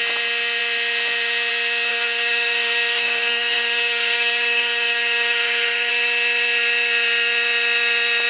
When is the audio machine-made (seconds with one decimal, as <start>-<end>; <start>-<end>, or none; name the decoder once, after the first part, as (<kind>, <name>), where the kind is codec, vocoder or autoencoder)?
1.9-5.9 (codec, SNAC)